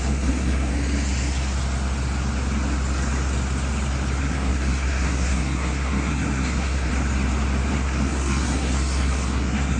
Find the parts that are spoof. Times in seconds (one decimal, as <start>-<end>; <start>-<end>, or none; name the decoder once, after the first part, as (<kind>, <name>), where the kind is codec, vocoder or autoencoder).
0.0-0.7 (codec, SNAC); 4.2-6.9; 7.7-9.8